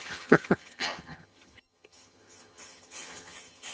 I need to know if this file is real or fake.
fake